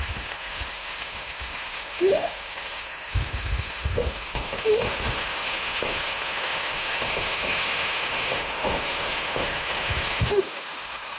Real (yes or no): no